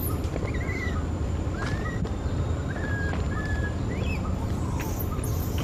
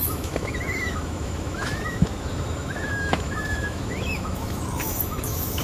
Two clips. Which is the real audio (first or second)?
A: first